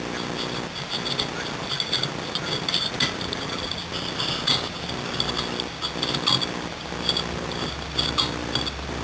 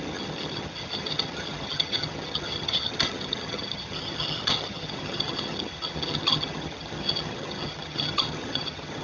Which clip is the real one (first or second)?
first